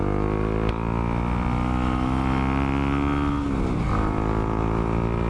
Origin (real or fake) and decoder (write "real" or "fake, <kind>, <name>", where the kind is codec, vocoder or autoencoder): real